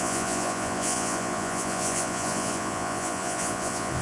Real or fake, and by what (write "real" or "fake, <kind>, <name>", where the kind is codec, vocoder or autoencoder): fake, vocoder, Vocos